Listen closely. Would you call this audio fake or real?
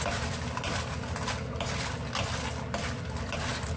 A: real